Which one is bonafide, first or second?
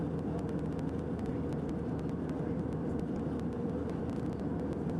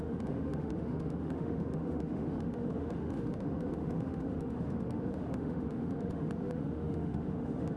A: first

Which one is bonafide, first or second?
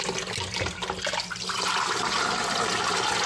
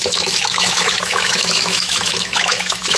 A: first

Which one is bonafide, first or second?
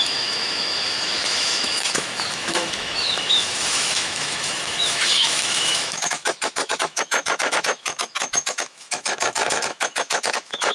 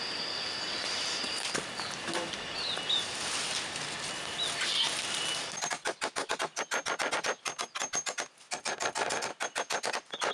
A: second